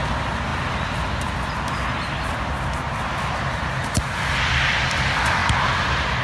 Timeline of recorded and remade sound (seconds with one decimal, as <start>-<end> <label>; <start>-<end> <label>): 0.0-6.2 recorded